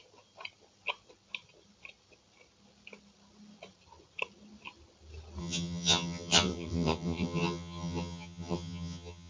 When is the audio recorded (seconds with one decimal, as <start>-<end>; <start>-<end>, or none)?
0.0-5.4